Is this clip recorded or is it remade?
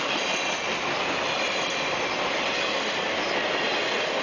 recorded